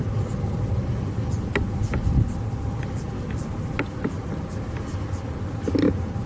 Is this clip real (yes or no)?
yes